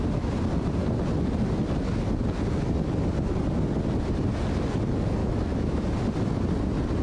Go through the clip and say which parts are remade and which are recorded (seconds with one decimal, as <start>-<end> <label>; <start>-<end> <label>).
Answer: 0.0-5.2 recorded; 5.2-5.8 remade; 5.8-7.0 recorded